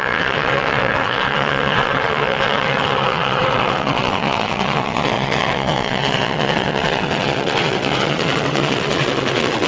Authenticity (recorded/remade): remade